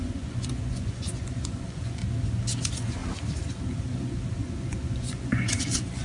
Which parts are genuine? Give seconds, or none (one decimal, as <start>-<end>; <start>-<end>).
2.0-2.6; 3.0-3.8